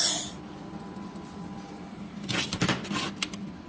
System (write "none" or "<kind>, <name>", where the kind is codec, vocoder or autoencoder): none